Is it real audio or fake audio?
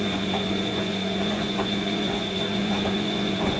fake